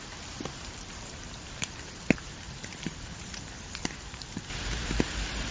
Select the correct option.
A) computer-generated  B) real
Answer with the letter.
A